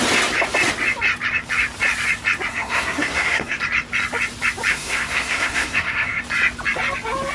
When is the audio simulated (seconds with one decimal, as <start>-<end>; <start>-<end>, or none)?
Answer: 2.5-3.6; 4.7-6.2